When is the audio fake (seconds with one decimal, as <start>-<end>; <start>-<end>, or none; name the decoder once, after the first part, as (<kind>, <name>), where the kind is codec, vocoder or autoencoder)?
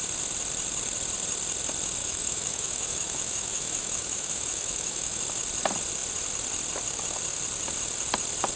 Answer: 2.0-5.2 (autoencoder, DAC-VAE)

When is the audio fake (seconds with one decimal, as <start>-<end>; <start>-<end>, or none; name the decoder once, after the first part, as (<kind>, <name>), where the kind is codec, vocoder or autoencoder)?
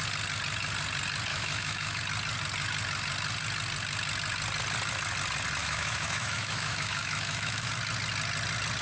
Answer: 1.3-2.0 (autoencoder, DAC-VAE); 5.6-7.7